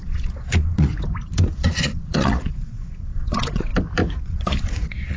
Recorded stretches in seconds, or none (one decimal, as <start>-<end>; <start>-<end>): 0.9-1.5; 3.7-4.2